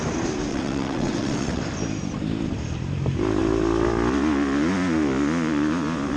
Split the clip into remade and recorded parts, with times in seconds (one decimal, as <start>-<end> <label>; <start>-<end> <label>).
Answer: 0.0-0.5 recorded; 0.5-1.6 remade; 1.6-6.2 recorded

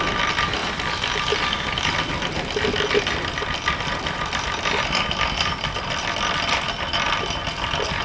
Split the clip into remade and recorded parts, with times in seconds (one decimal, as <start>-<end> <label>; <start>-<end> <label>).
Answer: 0.0-8.0 recorded

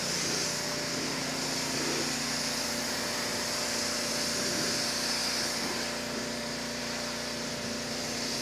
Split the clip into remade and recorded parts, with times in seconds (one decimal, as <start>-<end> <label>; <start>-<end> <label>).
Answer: 0.0-8.4 recorded

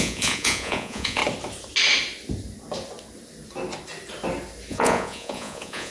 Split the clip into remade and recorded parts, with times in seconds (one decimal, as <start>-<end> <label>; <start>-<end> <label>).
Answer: 0.0-1.2 remade; 1.2-4.7 recorded; 4.7-5.9 remade

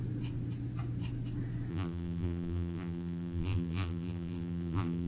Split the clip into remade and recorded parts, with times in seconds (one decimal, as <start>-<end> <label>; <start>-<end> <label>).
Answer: 0.0-1.7 recorded; 1.7-5.1 remade

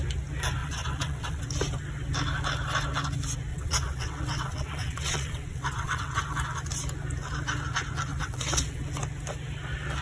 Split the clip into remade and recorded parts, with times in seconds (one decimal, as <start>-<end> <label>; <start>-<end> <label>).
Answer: 0.0-0.6 recorded; 0.6-1.4 remade; 1.4-3.5 recorded; 3.5-6.2 remade; 6.2-8.1 recorded; 8.1-8.8 remade; 8.8-10.0 recorded

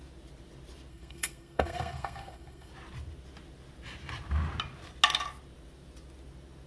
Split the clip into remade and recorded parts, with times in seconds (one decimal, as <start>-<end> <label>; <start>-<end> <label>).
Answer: 0.0-0.9 recorded; 0.9-2.7 remade; 2.7-6.7 recorded

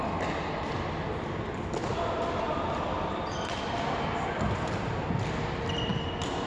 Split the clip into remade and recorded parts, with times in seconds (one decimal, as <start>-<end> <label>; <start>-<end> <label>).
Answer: 0.0-1.8 recorded; 1.8-3.7 remade; 3.7-5.9 recorded; 5.9-6.5 remade